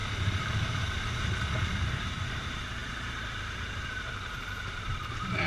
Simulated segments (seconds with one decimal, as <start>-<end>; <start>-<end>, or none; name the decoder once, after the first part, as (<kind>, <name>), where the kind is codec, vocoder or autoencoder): 0.0-5.5 (vocoder, BigVGAN v2)